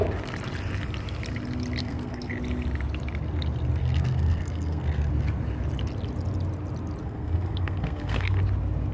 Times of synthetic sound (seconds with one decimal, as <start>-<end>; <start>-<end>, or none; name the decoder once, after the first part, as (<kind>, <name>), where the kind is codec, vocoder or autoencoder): 1.8-2.3 (codec, SNAC); 3.8-5.1; 7.0-8.4